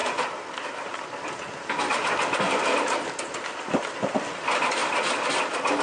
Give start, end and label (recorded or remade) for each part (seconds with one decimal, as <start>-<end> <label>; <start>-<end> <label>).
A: 0.0-5.8 recorded